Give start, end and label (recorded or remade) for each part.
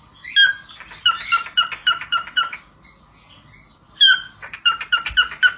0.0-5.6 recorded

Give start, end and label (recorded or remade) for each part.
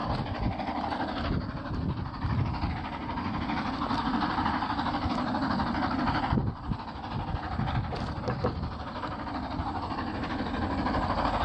0.0-11.4 recorded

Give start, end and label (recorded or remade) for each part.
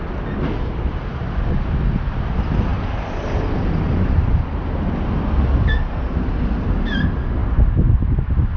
0.0-8.6 recorded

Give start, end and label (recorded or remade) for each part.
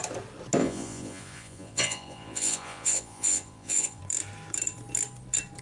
0.0-0.6 recorded; 0.6-4.0 remade; 4.0-5.6 recorded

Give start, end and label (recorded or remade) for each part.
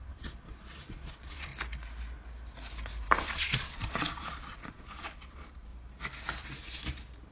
0.0-1.5 remade; 1.5-3.2 recorded; 3.2-5.7 remade; 5.7-7.3 recorded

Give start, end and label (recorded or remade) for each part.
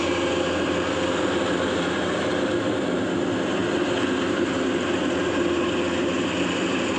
0.0-7.0 recorded